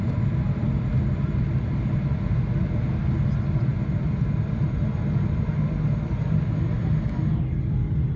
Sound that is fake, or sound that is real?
real